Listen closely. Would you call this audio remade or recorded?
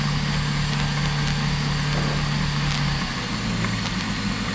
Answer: recorded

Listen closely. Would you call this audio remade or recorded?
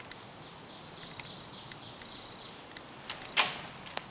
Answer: recorded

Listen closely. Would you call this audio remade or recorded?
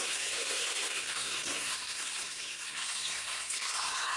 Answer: remade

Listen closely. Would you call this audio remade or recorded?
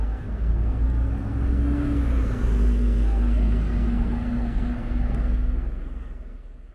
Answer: remade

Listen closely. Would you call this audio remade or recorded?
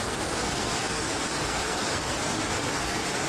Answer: remade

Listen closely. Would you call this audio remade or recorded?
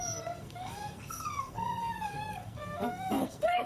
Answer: remade